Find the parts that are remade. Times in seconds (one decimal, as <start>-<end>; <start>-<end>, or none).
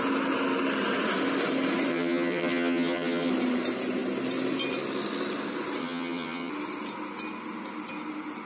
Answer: 1.9-3.3; 5.8-6.5